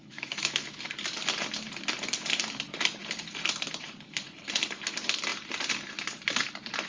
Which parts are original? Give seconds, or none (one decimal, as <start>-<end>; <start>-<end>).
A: 0.8-6.9